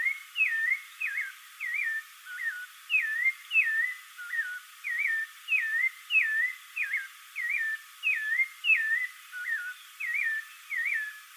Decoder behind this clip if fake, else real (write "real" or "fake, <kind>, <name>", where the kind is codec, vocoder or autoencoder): real